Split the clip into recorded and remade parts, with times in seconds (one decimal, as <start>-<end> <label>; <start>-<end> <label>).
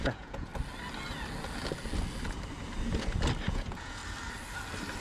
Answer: 0.0-0.5 remade; 0.5-3.5 recorded; 3.5-4.0 remade; 4.0-5.0 recorded